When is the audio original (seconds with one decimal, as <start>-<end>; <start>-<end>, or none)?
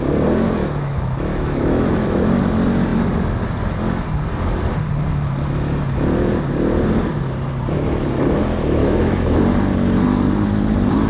0.0-0.6; 2.4-8.8; 9.4-11.1